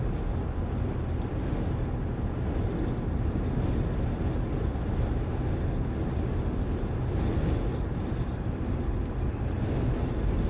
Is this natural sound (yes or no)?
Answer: yes